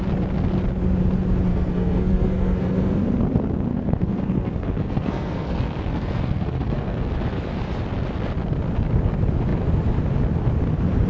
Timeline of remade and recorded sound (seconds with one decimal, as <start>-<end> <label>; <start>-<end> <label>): 0.0-1.5 recorded; 1.5-3.0 remade; 3.0-3.7 recorded; 3.7-7.1 remade; 7.1-11.1 recorded